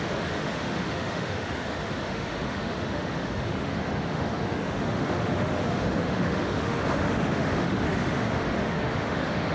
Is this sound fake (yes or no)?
yes